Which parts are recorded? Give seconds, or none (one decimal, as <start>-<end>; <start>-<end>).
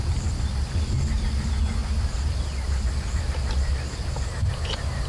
0.0-5.1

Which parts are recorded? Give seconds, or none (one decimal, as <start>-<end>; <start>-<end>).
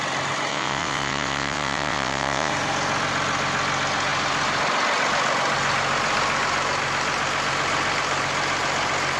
0.0-0.5; 2.5-9.2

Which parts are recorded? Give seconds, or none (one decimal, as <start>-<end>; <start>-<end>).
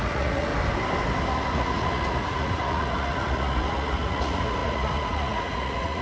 0.5-1.3